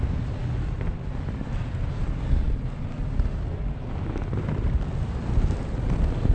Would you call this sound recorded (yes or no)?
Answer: yes